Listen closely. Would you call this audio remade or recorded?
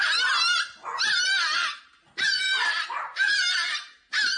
remade